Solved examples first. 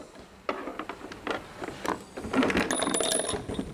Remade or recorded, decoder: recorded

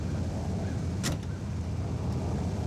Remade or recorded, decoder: recorded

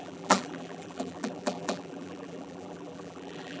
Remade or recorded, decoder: remade, vocoder, BigVGAN v2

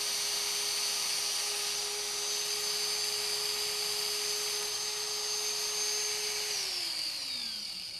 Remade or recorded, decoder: recorded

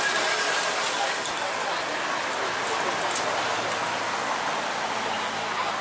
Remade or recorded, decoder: recorded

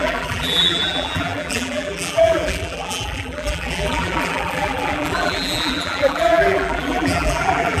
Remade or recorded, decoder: remade, vocoder, BigVGAN v2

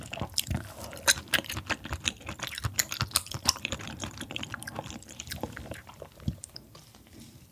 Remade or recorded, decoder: remade, vocoder, BigVGAN v2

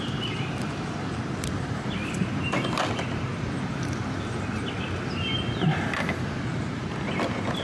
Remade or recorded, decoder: remade, vocoder, BigVGAN v2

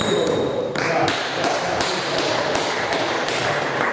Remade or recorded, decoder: remade, vocoder, BigVGAN v2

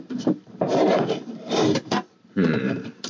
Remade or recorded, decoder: remade, vocoder, BigVGAN v2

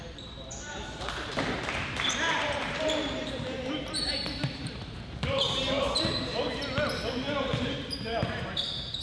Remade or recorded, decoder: remade, vocoder, BigVGAN v2